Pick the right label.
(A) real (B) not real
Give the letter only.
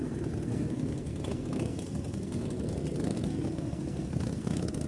B